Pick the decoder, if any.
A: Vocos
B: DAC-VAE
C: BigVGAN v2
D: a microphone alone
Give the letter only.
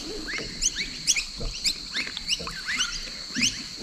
D